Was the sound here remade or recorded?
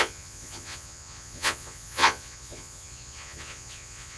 remade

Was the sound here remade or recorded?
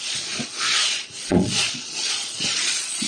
remade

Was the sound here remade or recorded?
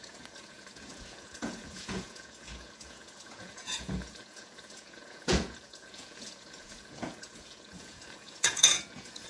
remade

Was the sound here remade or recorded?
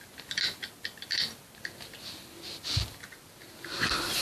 recorded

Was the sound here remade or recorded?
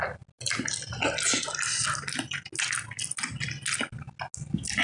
recorded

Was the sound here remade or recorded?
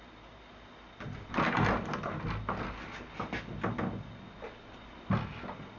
recorded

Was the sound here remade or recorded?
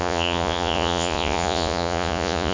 remade